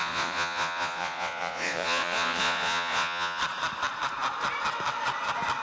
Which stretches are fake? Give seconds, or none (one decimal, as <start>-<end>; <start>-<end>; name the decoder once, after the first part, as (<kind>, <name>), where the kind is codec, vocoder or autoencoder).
0.0-3.4 (vocoder, Vocos)

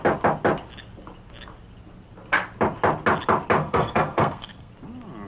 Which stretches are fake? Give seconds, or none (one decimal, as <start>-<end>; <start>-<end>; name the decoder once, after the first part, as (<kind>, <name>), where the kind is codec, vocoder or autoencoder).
3.6-4.7 (codec, SNAC)

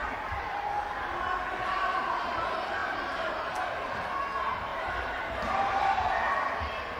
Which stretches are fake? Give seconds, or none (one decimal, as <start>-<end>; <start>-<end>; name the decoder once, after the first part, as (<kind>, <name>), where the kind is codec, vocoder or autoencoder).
0.0-0.7 (vocoder, BigVGAN v2); 2.8-3.6; 4.7-6.0

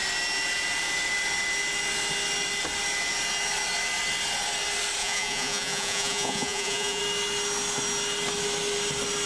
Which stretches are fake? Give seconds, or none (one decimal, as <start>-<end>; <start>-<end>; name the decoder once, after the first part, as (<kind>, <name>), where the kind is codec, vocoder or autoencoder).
5.0-7.0 (vocoder, Vocos)

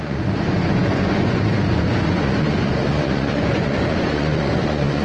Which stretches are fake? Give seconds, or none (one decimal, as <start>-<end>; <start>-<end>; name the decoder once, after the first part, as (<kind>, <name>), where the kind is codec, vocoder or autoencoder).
0.0-5.0 (vocoder, Vocos)

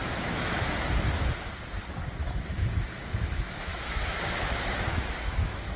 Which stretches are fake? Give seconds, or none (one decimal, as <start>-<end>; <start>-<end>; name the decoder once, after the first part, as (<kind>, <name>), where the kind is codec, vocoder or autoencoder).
0.0-0.7 (autoencoder, DAC-VAE); 2.2-5.8

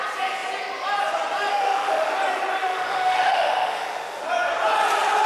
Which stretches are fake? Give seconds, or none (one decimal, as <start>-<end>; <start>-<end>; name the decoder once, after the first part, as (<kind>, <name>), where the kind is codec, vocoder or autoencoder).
1.5-2.1 (autoencoder, DAC-VAE); 2.6-4.2

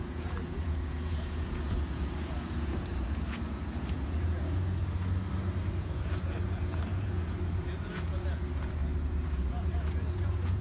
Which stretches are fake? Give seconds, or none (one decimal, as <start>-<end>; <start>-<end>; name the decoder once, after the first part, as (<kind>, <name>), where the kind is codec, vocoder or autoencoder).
0.0-4.8 (vocoder, Vocos); 5.7-10.6